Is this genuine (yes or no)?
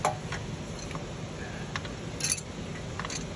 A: yes